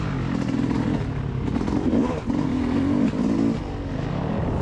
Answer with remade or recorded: recorded